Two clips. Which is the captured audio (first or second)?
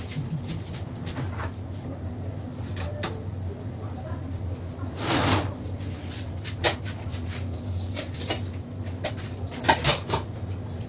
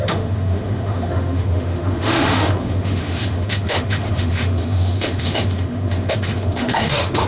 first